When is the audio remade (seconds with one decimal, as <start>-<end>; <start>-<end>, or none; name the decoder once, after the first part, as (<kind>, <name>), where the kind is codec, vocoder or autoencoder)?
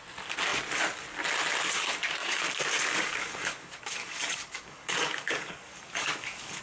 2.2-6.6 (codec, DAC)